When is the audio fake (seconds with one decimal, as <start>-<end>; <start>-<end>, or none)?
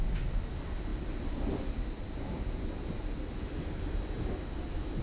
none